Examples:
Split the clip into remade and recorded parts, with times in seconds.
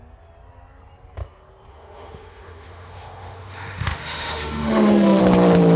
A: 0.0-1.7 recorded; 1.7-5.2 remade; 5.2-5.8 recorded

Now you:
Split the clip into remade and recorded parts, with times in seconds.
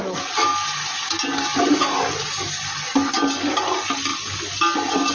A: 0.0-5.1 recorded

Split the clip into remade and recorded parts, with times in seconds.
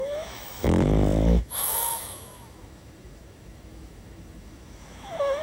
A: 0.0-5.4 remade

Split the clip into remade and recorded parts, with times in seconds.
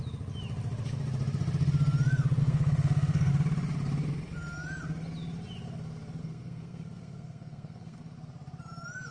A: 0.0-2.4 recorded; 2.4-3.3 remade; 3.3-6.2 recorded; 6.2-8.0 remade; 8.0-9.1 recorded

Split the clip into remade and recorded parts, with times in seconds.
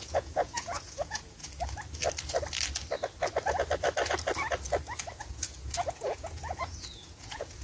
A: 0.0-1.4 remade; 1.4-5.2 recorded; 5.2-7.6 remade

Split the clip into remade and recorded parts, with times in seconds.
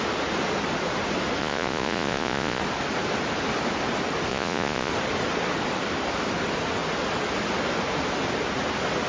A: 0.0-1.4 recorded; 1.4-2.6 remade; 2.6-4.3 recorded; 4.3-4.9 remade; 4.9-9.1 recorded